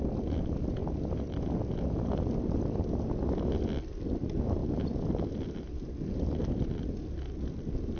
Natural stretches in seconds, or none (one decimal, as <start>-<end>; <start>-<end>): 0.0-4.6; 5.2-6.4; 7.0-8.0